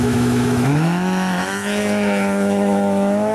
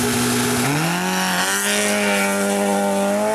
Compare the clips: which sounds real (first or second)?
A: second